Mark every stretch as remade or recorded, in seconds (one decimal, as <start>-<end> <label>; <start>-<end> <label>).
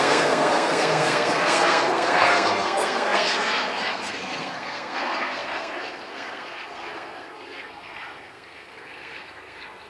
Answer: 0.0-9.9 remade